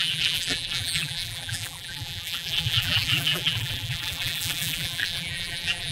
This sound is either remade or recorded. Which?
remade